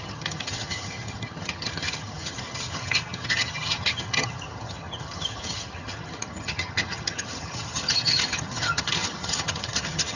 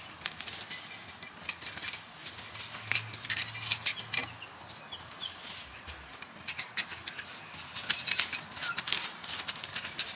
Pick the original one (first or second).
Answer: second